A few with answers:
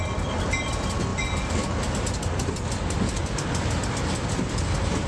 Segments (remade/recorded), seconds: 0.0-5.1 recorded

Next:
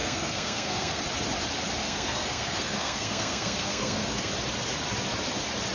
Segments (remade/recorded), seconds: 0.0-1.0 remade; 1.0-1.8 recorded; 1.8-4.3 remade; 4.3-5.7 recorded

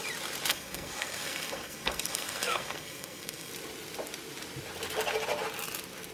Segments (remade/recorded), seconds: 0.0-0.5 recorded; 0.5-3.5 remade; 3.5-6.1 recorded

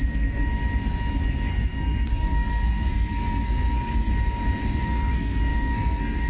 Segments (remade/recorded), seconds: 0.0-0.5 remade; 0.5-1.5 recorded; 1.5-4.1 remade; 4.1-4.8 recorded; 4.8-6.3 remade

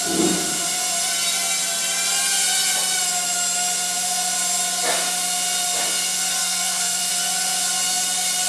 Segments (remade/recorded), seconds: 0.0-6.4 recorded; 6.4-7.1 remade; 7.1-8.5 recorded

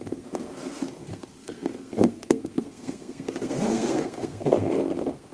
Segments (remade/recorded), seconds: 0.0-5.3 remade